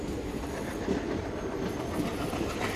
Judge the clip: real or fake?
real